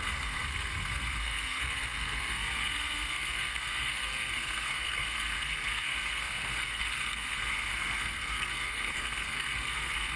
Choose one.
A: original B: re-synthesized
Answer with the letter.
B